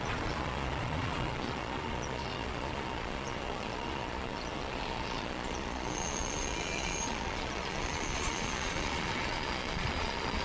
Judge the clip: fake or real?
fake